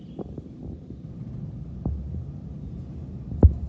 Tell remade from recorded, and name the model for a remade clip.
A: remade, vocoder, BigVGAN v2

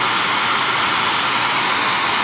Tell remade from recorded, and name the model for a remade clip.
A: recorded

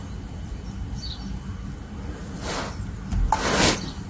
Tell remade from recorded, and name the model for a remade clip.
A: recorded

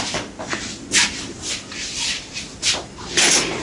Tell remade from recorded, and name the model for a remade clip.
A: recorded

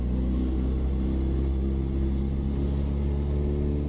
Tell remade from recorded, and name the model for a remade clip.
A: recorded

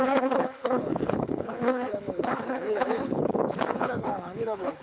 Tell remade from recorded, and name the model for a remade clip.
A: remade, codec, HILCodec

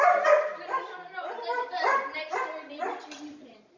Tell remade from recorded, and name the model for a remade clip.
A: recorded